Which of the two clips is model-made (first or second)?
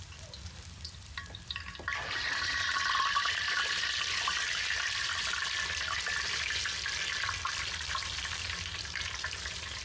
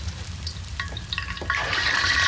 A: second